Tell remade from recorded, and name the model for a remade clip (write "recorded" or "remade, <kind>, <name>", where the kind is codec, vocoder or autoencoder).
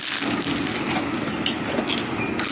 recorded